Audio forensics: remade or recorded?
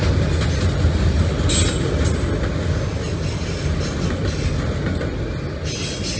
recorded